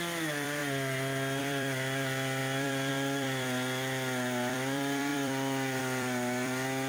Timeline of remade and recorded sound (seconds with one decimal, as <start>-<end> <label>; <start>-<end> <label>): 0.0-0.6 remade; 0.6-1.4 recorded; 1.4-6.9 remade